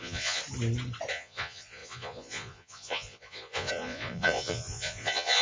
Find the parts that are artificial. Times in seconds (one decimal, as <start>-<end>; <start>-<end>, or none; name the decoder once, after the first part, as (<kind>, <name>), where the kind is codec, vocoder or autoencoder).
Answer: 0.0-0.4 (vocoder, Vocos); 1.1-5.4